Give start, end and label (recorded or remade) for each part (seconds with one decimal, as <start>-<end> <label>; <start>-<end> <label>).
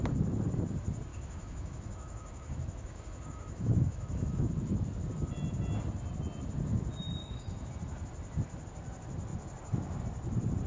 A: 0.0-1.1 recorded; 1.1-4.5 remade; 4.5-7.2 recorded; 7.2-7.7 remade; 7.7-10.7 recorded